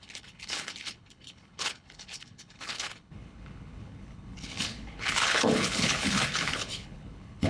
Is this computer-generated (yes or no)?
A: yes